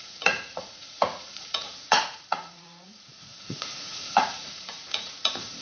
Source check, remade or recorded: remade